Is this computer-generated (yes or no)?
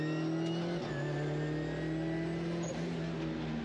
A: no